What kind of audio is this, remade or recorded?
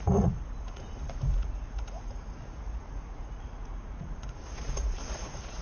remade